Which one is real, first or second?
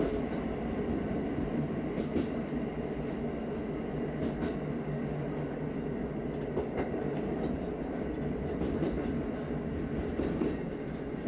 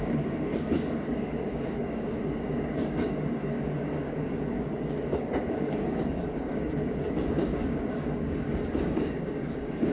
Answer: first